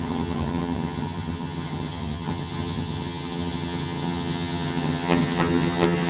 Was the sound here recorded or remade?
remade